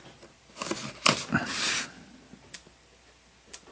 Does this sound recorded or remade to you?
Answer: recorded